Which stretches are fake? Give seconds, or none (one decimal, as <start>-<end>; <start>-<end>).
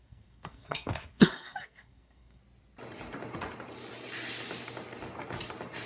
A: 0.0-2.4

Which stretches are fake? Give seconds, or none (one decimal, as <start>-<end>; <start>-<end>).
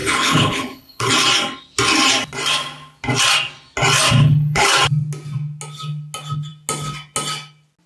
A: 0.0-1.1; 4.2-4.7